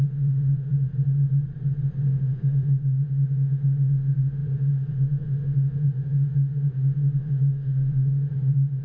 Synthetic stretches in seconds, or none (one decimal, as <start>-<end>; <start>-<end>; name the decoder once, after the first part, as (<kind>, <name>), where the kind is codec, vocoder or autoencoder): 0.0-0.7 (autoencoder, DAC-VAE); 2.2-8.8